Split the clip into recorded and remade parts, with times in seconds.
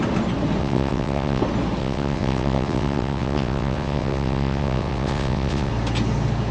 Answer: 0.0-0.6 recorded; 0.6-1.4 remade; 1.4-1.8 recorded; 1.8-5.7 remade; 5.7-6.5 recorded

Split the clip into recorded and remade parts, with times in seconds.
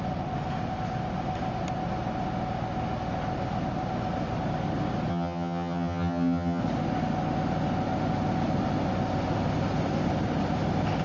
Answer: 0.0-5.1 recorded; 5.1-6.6 remade; 6.6-11.0 recorded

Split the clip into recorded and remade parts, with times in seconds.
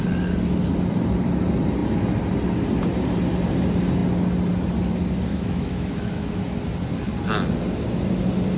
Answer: 0.0-5.3 recorded; 5.3-6.4 remade; 6.4-8.6 recorded